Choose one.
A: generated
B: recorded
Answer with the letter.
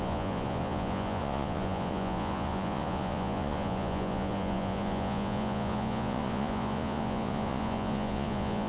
A